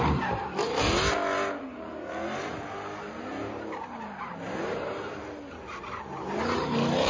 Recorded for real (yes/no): yes